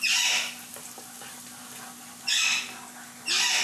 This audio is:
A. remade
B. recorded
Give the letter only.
B